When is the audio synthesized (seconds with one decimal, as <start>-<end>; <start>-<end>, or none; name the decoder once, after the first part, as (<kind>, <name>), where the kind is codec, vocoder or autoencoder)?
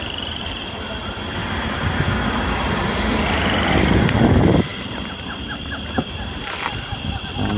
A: 1.4-4.2 (vocoder, BigVGAN v2); 4.7-6.4